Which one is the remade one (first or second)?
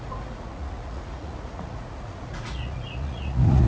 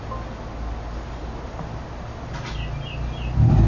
first